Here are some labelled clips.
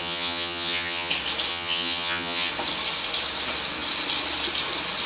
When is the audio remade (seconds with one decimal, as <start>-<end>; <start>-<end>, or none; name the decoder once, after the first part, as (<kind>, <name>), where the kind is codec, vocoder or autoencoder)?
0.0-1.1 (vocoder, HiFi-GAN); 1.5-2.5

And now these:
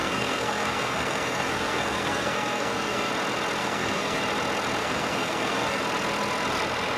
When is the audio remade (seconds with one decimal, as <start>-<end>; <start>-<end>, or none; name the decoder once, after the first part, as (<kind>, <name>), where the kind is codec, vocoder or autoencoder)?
0.0-3.1 (codec, SNAC); 3.6-4.2; 4.8-5.8

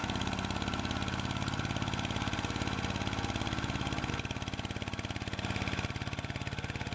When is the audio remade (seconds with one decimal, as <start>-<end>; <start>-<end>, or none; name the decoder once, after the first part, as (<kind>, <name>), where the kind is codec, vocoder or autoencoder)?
none

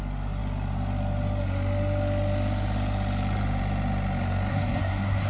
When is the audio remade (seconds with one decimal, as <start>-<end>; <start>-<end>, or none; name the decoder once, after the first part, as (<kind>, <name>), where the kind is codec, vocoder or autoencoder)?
4.5-5.3 (codec, SNAC)